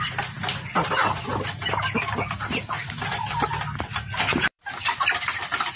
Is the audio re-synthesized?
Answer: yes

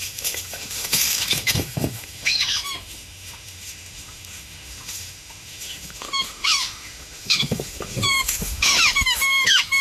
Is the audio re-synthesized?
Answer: yes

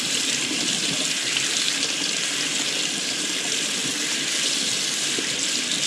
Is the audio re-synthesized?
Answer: yes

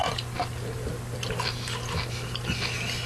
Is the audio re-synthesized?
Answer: no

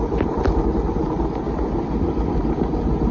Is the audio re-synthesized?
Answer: no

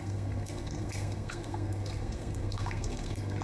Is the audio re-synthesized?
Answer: yes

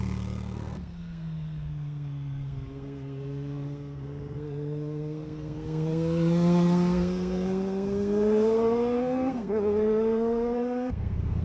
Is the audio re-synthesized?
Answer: yes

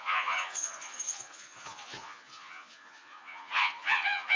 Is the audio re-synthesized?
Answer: yes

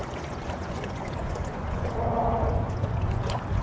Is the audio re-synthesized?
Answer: yes